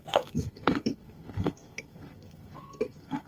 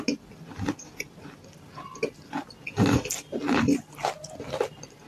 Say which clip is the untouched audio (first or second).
second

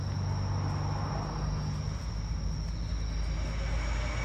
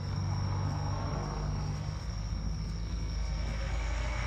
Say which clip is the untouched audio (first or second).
first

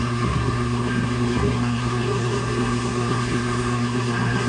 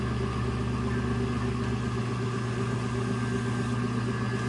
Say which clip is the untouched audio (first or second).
second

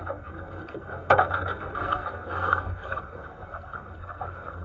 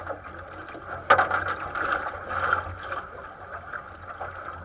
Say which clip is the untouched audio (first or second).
second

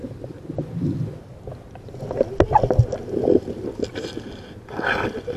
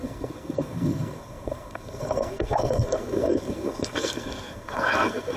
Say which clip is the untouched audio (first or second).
first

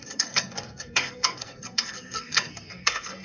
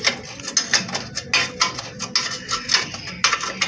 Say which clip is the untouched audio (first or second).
second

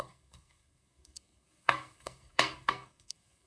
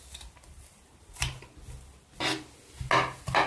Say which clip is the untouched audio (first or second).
second